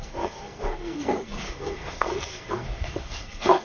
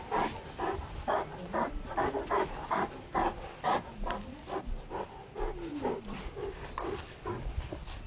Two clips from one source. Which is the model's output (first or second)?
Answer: first